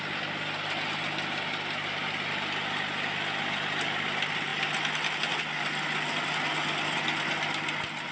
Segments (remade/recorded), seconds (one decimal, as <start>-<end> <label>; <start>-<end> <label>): 0.0-8.1 recorded

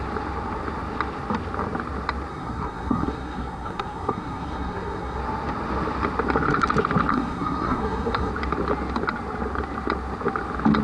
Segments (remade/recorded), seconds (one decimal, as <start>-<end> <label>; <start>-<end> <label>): 0.0-2.3 recorded; 2.3-5.2 remade; 5.2-7.1 recorded; 7.1-8.3 remade; 8.3-10.8 recorded

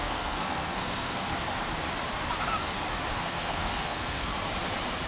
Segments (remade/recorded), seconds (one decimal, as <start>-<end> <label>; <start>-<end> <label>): 0.0-1.3 remade; 1.3-3.2 recorded; 3.2-4.3 remade; 4.3-5.1 recorded

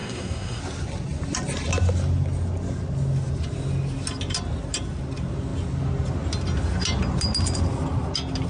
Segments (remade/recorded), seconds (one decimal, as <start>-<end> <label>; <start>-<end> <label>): 0.0-0.6 remade; 0.6-8.5 recorded

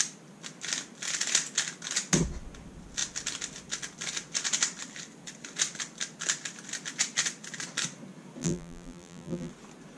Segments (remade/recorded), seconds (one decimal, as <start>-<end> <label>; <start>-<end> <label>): 0.0-8.4 recorded; 8.4-9.5 remade; 9.5-10.0 recorded

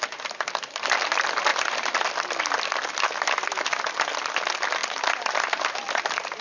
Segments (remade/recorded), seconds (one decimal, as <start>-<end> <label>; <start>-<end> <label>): 0.0-6.4 recorded

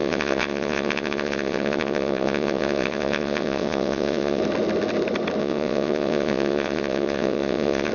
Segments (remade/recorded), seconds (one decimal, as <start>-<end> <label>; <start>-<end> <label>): 0.0-4.4 remade; 4.4-5.4 recorded; 5.4-7.9 remade